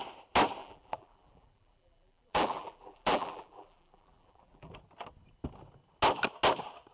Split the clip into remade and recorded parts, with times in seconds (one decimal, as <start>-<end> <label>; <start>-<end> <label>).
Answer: 0.0-0.6 recorded; 0.6-4.7 remade; 4.7-6.9 recorded